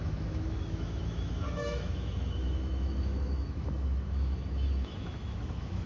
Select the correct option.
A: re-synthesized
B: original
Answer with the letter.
A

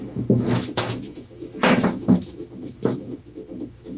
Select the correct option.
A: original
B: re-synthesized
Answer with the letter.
B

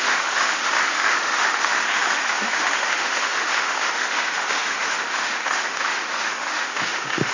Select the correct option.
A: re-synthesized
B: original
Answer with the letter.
A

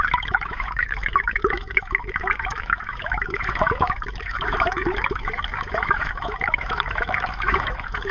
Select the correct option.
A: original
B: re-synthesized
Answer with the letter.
B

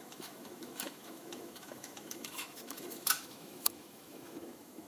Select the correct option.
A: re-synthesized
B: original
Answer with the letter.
A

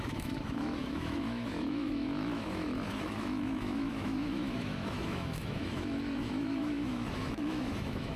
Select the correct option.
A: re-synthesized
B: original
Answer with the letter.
A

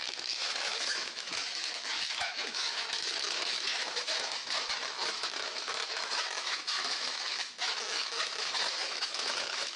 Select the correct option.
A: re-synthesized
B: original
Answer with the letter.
A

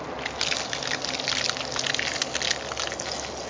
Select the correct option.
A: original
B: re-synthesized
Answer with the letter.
A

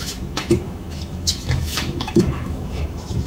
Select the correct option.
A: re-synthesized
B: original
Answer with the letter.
A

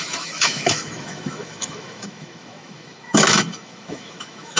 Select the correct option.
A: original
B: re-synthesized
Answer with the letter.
B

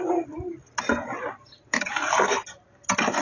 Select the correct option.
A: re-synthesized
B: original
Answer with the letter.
B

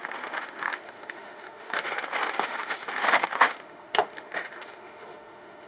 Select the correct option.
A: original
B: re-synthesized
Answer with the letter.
B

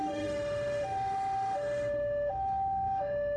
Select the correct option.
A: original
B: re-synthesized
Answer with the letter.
B